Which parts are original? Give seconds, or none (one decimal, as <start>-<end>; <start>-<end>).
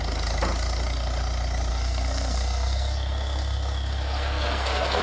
0.0-1.7